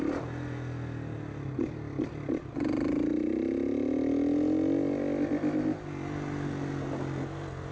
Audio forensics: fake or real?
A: real